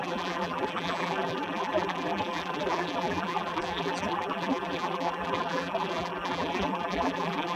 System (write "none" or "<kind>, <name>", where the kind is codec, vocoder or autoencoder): vocoder, BigVGAN v2